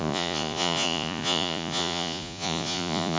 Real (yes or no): no